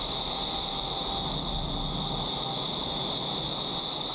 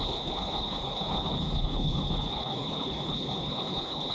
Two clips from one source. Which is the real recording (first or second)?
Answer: first